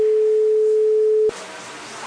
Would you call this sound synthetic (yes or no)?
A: no